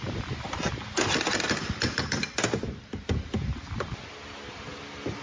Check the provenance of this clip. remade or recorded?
recorded